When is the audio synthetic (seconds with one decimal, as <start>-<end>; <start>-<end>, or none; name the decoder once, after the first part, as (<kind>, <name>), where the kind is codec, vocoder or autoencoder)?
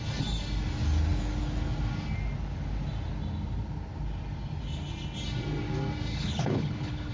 6.1-7.1 (codec, HILCodec)